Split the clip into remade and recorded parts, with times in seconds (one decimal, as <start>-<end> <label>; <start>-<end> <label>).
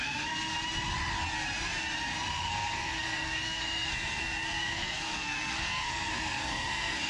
0.0-0.5 remade; 0.5-2.3 recorded; 2.3-7.1 remade